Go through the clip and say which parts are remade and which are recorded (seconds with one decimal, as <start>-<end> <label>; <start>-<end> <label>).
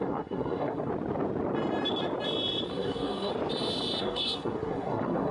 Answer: 0.0-0.9 remade; 0.9-2.7 recorded; 2.7-3.3 remade; 3.3-4.0 recorded; 4.0-5.3 remade